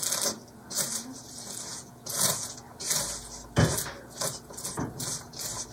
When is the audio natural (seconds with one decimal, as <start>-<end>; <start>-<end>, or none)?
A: 0.0-1.7; 2.6-5.7